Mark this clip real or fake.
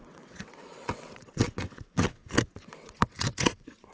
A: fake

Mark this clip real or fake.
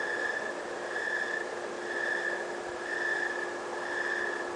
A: real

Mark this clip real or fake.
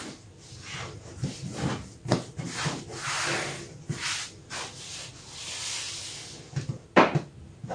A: real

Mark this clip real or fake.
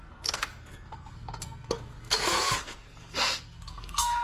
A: fake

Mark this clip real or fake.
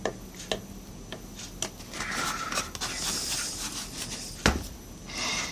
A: real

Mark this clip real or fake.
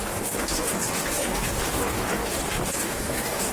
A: fake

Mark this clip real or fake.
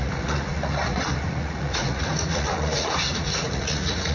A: fake